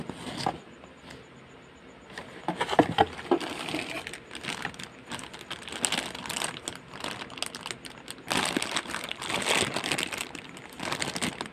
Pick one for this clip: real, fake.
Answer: real